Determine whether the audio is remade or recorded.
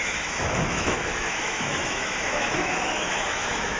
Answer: remade